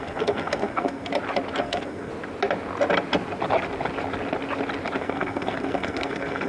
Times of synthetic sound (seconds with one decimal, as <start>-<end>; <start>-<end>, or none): 0.0-1.1; 1.6-2.1; 5.0-6.5